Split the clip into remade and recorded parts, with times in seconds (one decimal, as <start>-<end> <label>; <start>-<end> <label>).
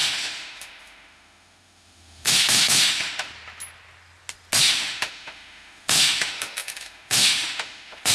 0.0-3.3 remade; 3.3-4.6 recorded; 4.6-8.1 remade